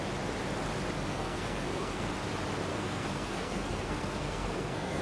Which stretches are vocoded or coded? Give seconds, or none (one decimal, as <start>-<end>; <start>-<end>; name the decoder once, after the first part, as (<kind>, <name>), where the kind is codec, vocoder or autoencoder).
1.1-2.1 (codec, SNAC); 2.7-5.0